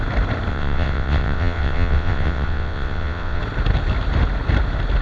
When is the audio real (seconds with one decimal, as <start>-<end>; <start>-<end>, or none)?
0.0-0.5; 3.4-5.0